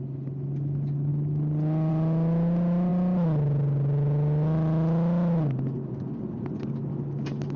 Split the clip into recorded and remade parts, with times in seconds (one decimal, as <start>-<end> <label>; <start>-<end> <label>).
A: 0.0-7.6 recorded